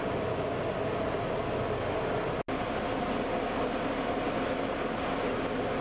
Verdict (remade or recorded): recorded